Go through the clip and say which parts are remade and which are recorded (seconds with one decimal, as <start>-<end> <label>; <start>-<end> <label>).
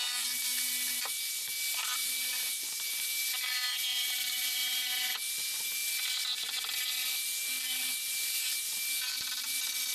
0.0-0.4 recorded; 0.4-1.5 remade; 1.5-2.0 recorded; 2.0-3.0 remade; 3.0-3.9 recorded; 3.9-4.9 remade; 4.9-9.9 recorded